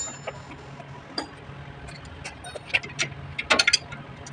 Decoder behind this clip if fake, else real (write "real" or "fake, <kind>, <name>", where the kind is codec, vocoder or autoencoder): real